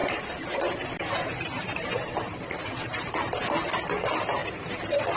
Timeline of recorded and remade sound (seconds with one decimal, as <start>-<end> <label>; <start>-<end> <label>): 0.0-3.1 remade; 3.1-4.4 recorded; 4.4-5.2 remade